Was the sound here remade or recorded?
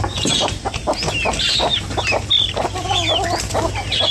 recorded